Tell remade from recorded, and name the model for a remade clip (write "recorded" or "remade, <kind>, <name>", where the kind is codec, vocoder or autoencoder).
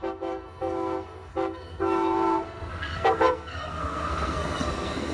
remade, codec, SNAC